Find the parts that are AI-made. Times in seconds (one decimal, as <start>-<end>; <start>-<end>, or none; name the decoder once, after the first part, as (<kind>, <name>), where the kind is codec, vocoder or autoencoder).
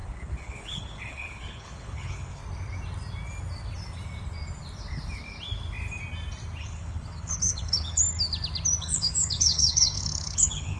0.0-2.4 (codec, HILCodec); 6.6-8.0; 8.8-10.8